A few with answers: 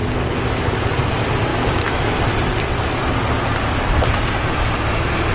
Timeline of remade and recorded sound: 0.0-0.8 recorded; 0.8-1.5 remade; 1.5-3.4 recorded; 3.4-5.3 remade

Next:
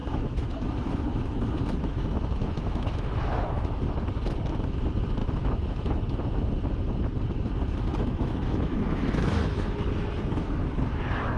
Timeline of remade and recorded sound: 0.0-3.8 remade; 3.8-5.2 recorded; 5.2-5.9 remade; 5.9-7.9 recorded; 7.9-9.8 remade; 9.8-11.4 recorded

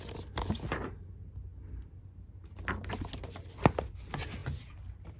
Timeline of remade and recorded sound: 0.0-5.2 recorded

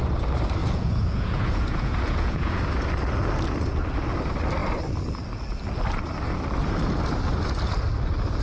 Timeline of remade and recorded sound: 0.0-0.6 recorded; 0.6-2.6 remade; 2.6-8.4 recorded

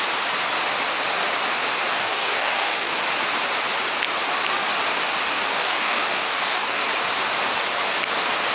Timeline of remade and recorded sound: 0.0-1.9 recorded; 1.9-3.0 remade; 3.0-5.5 recorded; 5.5-6.8 remade; 6.8-8.5 recorded

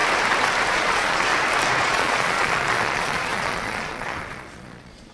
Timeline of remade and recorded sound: 0.0-0.7 recorded; 0.7-1.3 remade; 1.3-1.8 recorded; 1.8-5.1 remade

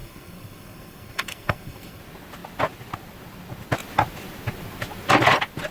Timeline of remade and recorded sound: 0.0-2.0 remade; 2.0-5.7 recorded

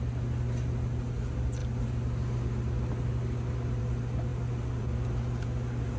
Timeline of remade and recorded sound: 0.0-6.0 recorded